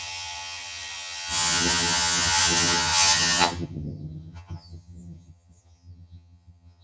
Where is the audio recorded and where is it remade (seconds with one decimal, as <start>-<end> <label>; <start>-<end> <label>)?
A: 0.0-6.8 remade